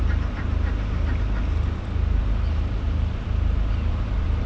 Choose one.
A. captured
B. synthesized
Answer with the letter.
A